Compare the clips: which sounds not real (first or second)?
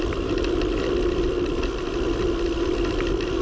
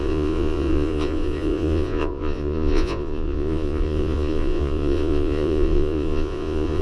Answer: second